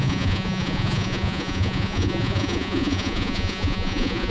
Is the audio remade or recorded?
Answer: remade